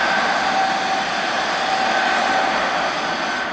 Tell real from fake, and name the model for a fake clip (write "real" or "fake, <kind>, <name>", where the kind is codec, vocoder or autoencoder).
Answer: real